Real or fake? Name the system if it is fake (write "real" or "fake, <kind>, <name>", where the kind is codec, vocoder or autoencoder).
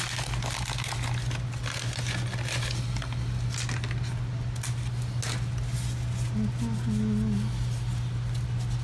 real